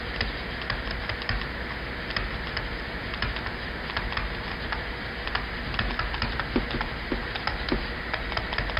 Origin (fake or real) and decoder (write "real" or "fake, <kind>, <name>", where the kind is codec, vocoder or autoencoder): real